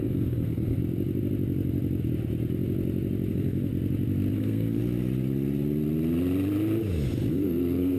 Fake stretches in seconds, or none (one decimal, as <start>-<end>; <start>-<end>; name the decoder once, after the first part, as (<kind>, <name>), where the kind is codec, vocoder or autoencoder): 0.0-0.8 (codec, SNAC); 3.3-3.7; 4.3-4.8; 7.3-8.0

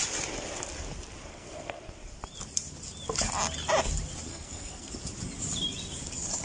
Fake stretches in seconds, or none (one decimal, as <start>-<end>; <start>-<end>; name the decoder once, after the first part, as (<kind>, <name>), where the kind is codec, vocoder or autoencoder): 1.3-1.8 (codec, SNAC); 4.3-4.9

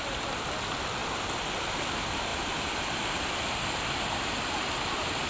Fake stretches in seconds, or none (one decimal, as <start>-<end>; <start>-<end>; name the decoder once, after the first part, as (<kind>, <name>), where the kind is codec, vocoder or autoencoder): none